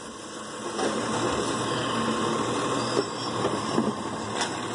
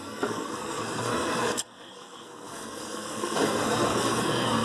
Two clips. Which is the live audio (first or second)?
first